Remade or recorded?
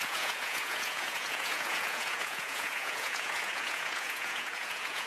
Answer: remade